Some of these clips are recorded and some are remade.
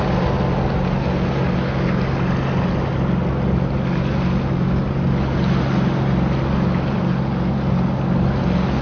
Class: recorded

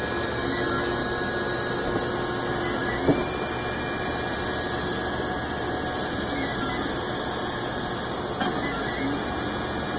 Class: recorded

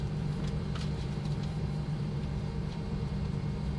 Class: remade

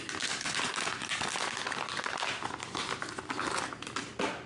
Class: recorded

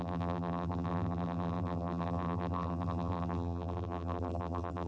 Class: remade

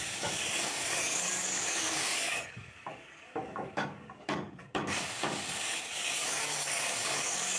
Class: remade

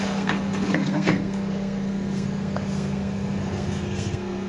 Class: remade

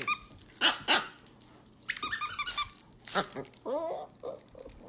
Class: recorded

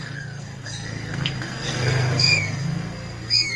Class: remade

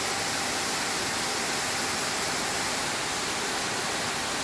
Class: recorded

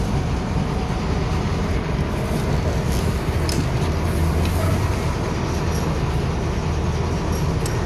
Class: recorded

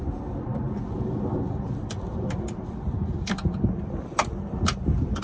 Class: recorded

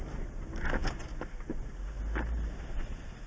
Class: recorded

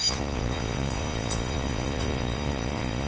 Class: remade